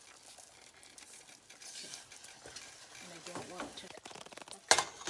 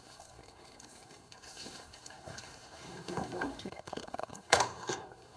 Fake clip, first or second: second